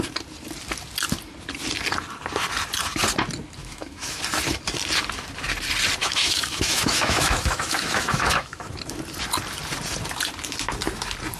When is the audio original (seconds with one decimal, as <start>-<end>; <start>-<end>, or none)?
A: 0.0-3.6; 4.2-6.0; 8.7-11.4